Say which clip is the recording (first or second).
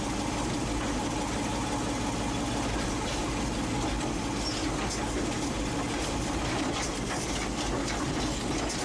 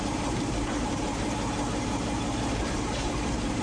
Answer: first